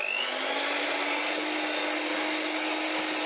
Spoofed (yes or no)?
no